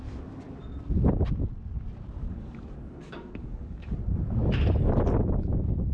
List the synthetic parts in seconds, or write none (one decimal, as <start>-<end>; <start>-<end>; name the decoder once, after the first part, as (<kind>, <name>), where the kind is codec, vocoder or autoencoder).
2.3-3.9 (codec, DAC)